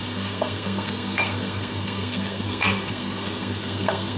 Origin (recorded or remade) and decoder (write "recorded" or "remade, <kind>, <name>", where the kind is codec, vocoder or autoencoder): remade, codec, SNAC